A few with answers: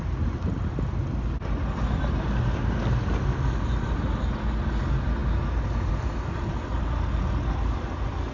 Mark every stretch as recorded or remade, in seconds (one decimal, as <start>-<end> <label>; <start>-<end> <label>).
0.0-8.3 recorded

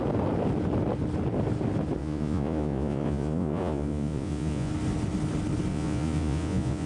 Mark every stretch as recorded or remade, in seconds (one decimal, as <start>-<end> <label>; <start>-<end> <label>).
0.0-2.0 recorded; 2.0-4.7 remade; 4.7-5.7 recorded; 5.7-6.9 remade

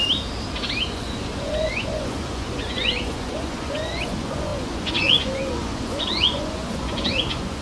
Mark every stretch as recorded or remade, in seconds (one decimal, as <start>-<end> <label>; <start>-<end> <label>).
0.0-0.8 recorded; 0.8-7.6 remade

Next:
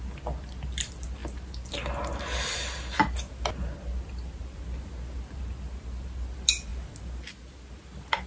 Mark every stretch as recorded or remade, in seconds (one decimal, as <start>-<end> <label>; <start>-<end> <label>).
0.0-8.3 recorded